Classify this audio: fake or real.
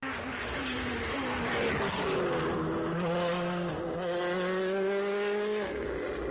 real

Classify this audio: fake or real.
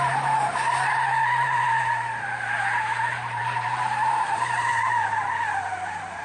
fake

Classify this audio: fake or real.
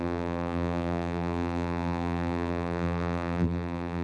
fake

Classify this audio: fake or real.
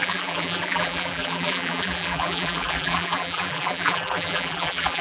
fake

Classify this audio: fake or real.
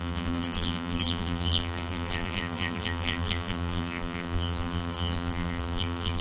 fake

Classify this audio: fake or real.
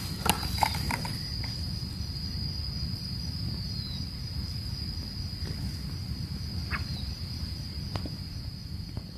real